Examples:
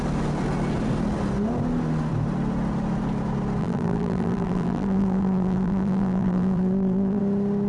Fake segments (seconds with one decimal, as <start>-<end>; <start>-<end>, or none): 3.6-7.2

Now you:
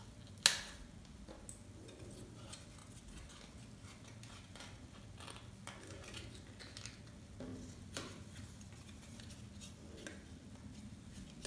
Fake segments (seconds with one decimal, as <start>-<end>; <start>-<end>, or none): 7.5-10.0

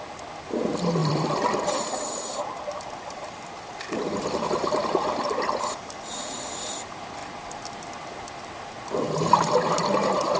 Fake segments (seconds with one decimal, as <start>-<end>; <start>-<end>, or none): 1.0-5.7; 7.2-7.7

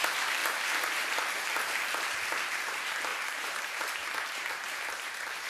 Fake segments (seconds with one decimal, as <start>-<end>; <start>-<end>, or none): 0.0-5.5

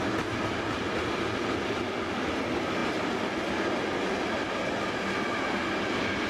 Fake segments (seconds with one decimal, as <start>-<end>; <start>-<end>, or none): none

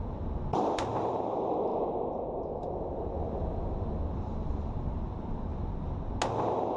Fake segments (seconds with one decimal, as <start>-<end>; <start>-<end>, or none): 0.0-1.7; 2.5-5.5

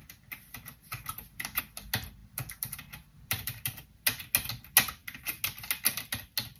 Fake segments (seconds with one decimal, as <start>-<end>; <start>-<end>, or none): 0.0-1.6; 2.2-4.0